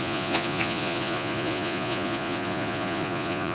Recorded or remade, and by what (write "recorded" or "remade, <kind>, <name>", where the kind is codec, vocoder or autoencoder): remade, vocoder, Vocos